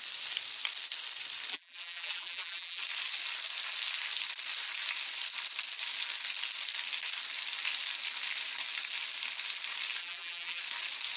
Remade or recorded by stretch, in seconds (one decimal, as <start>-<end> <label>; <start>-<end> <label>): 0.0-1.5 recorded; 1.5-2.8 remade; 2.8-10.0 recorded; 10.0-10.6 remade; 10.6-11.2 recorded

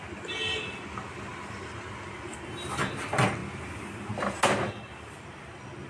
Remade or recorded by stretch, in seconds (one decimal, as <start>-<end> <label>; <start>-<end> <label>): 0.0-5.9 recorded

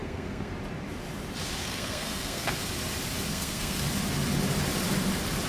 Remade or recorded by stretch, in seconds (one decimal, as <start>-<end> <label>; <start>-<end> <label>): 0.0-0.5 remade; 0.5-1.6 recorded; 1.6-2.5 remade; 2.5-3.3 recorded; 3.3-3.8 remade; 3.8-5.5 recorded

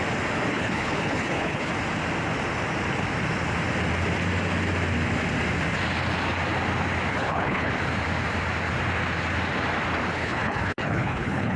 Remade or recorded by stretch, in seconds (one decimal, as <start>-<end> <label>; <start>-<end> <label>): 0.0-0.5 recorded; 0.5-1.7 remade; 1.7-7.1 recorded; 7.1-7.7 remade; 7.7-10.1 recorded; 10.1-11.6 remade

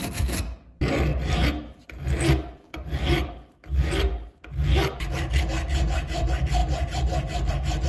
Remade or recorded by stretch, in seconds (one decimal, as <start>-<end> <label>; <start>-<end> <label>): 0.0-7.9 recorded

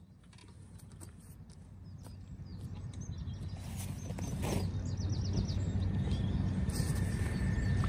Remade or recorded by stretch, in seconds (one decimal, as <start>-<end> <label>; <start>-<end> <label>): 0.0-7.9 recorded

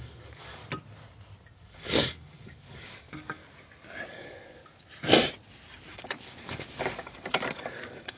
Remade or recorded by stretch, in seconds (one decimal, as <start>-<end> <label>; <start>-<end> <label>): 0.0-0.6 remade; 0.6-1.7 recorded; 1.7-3.4 remade; 3.4-4.1 recorded; 4.1-4.6 remade; 4.6-5.9 recorded; 5.9-8.2 remade

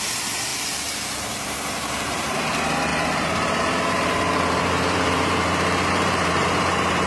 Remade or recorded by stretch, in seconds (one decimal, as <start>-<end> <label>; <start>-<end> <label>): 0.0-0.5 remade; 0.5-1.1 recorded; 1.1-7.1 remade